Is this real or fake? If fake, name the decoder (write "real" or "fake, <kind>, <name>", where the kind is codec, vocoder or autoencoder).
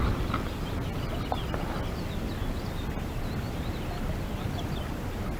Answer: real